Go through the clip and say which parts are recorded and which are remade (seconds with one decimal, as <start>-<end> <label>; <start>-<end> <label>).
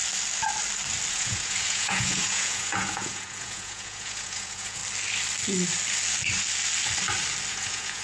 0.0-1.1 recorded; 1.1-4.8 remade; 4.8-7.5 recorded; 7.5-8.0 remade